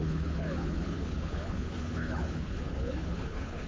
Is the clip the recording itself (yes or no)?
no